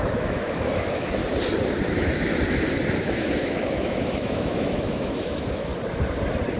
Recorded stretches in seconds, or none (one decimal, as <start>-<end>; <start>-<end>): 1.2-1.9; 2.3-3.0; 5.7-6.6